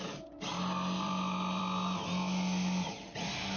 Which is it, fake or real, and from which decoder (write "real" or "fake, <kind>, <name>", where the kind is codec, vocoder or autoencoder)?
real